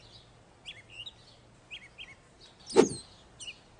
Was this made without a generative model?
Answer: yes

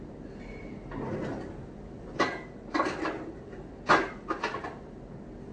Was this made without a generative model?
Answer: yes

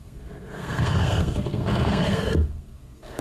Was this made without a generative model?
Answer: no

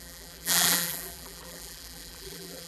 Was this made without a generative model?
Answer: no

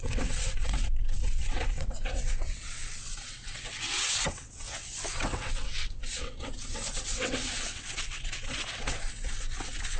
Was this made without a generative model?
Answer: no